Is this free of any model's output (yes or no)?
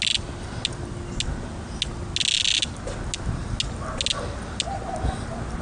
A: yes